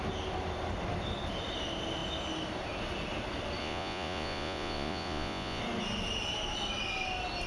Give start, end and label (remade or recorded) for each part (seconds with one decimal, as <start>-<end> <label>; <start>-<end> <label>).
0.0-3.6 recorded; 3.6-5.6 remade; 5.6-7.5 recorded